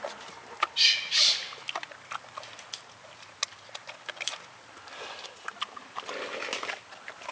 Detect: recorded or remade recorded